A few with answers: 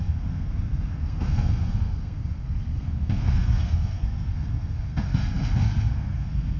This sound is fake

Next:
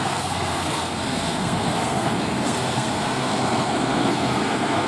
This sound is fake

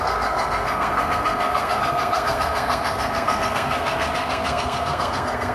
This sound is fake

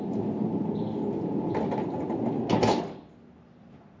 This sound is real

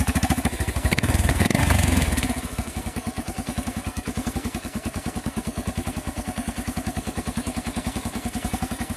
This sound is fake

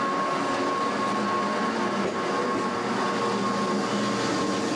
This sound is real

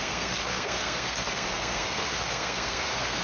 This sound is fake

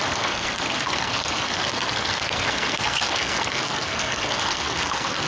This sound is fake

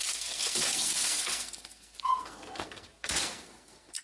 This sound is fake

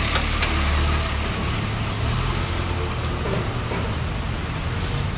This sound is real